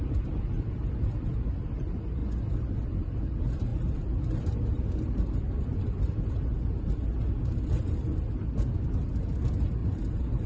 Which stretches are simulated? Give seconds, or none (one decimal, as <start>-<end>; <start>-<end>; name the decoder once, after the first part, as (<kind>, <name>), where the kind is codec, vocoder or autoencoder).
0.0-2.2 (vocoder, BigVGAN v2); 2.8-9.8